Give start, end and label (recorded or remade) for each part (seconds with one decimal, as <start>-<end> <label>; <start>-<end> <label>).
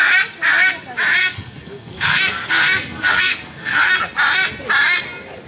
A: 0.0-1.2 recorded; 1.2-3.9 remade; 3.9-5.5 recorded